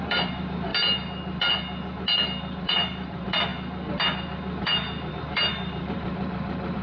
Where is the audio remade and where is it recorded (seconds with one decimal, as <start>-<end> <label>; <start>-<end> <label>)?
0.0-0.7 remade; 0.7-2.6 recorded; 2.6-3.5 remade; 3.5-5.1 recorded; 5.1-6.8 remade